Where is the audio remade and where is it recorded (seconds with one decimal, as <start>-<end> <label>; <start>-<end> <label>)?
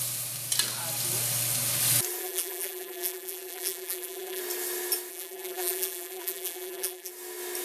0.0-2.2 recorded; 2.2-4.4 remade; 4.4-5.1 recorded; 5.1-7.1 remade; 7.1-7.6 recorded